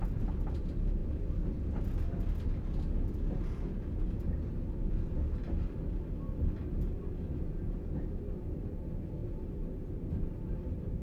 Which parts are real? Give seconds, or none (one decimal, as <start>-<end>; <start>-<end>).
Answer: 0.0-11.0